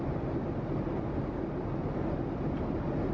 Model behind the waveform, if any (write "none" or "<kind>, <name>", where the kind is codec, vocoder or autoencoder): none